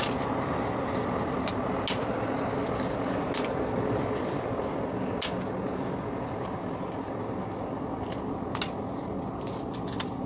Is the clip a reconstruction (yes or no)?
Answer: no